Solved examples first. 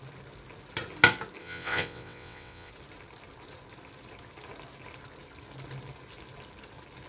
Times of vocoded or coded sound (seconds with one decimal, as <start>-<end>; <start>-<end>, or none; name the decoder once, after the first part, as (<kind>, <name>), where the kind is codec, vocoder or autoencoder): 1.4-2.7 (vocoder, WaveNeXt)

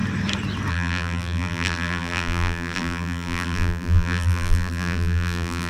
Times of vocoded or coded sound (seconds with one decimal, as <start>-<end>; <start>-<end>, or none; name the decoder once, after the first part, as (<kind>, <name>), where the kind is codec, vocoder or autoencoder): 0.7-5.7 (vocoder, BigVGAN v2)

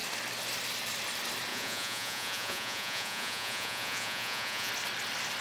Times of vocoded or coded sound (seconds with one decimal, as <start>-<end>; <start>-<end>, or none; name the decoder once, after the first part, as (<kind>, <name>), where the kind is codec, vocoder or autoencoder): 1.5-4.7 (vocoder, Vocos)

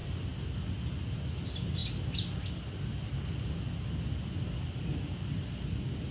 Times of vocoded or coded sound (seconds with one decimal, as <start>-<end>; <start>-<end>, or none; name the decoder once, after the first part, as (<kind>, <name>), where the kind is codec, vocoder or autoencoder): none

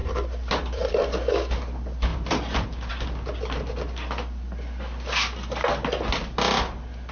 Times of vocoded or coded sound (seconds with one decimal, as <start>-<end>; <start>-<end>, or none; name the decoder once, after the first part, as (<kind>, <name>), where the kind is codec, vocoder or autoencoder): 0.0-0.9 (vocoder, BigVGAN v2); 2.1-2.9

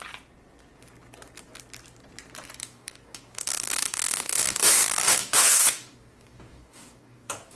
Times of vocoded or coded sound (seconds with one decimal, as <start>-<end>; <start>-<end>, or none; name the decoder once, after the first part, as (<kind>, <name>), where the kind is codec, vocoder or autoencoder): 2.6-7.6 (codec, DAC)

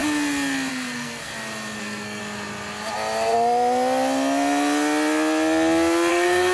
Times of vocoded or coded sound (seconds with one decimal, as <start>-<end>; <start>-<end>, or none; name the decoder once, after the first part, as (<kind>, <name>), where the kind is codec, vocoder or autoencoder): 0.7-1.3 (codec, SNAC); 1.8-2.2; 6.1-6.5

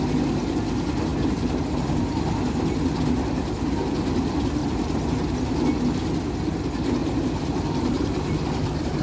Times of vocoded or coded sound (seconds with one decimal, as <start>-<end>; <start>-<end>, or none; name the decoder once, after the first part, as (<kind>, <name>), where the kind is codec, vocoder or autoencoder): 4.6-5.3 (vocoder, BigVGAN v2); 7.0-9.0